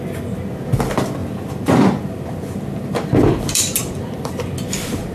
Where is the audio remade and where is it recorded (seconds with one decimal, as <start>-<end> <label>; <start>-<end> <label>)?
0.0-1.2 recorded; 1.2-4.3 remade; 4.3-5.1 recorded